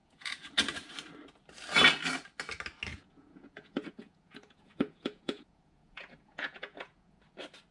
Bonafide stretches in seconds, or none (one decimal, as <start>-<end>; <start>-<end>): 0.5-2.9; 7.2-7.7